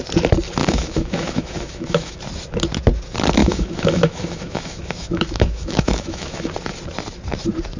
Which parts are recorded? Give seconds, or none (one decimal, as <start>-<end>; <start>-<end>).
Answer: 0.0-0.6; 2.2-3.4; 6.5-7.8